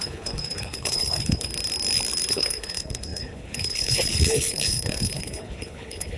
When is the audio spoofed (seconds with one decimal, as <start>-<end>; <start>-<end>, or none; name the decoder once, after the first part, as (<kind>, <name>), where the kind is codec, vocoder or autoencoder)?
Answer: 0.0-1.5 (codec, HILCodec); 2.3-6.2